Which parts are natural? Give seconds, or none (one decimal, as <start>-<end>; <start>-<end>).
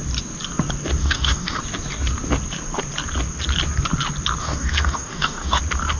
0.0-1.0; 1.6-4.4; 5.6-6.0